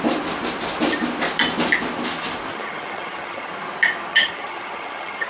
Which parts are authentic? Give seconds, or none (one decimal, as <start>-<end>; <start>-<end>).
0.0-2.5; 3.5-4.1